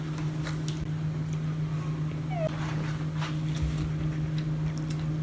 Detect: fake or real real